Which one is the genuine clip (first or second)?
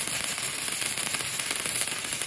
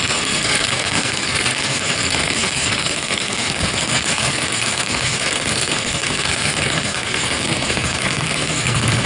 first